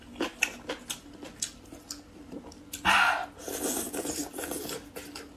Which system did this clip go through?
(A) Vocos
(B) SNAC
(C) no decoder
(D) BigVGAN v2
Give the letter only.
C